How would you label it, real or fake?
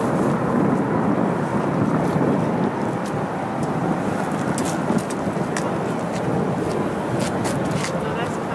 real